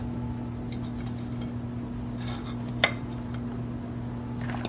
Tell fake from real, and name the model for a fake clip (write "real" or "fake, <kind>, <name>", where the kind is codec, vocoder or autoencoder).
real